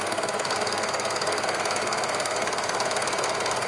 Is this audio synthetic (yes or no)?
yes